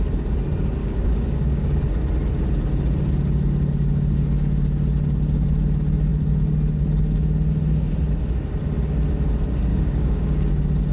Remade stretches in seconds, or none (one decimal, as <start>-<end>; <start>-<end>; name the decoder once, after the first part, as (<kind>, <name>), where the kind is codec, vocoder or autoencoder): 0.8-1.8 (codec, DAC); 9.7-10.5